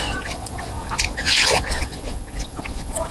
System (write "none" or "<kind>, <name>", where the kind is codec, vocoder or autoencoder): vocoder, Vocos